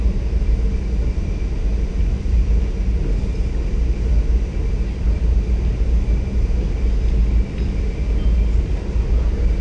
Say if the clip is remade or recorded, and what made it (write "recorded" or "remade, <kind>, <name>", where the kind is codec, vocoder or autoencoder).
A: recorded